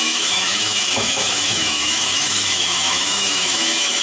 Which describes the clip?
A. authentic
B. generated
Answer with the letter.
B